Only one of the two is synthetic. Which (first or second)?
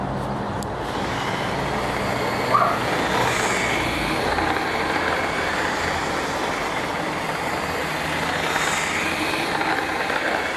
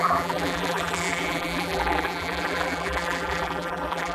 second